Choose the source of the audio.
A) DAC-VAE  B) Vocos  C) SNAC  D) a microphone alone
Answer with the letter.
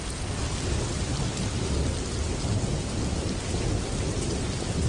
D